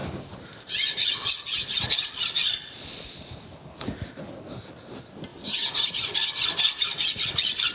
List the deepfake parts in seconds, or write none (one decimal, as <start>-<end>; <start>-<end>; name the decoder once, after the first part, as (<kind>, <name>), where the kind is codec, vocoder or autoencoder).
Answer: 0.0-0.7 (vocoder, BigVGAN v2); 5.3-5.9